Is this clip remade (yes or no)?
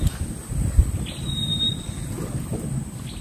no